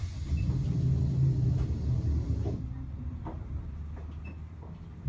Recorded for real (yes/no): yes